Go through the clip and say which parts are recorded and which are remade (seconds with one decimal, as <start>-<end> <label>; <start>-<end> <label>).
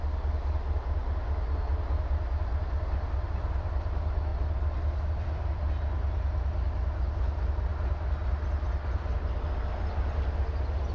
0.0-10.9 recorded